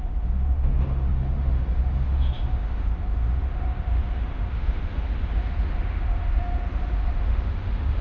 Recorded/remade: remade